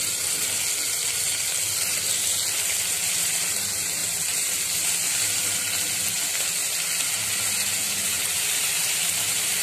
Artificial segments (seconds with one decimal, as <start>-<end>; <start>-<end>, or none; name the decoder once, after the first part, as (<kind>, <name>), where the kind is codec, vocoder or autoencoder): none